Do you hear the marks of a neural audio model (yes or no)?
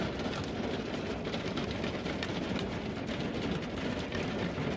no